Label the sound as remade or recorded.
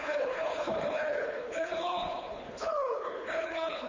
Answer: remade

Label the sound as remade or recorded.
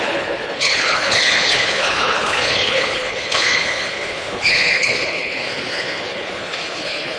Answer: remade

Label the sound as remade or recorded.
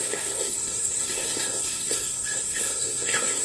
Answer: remade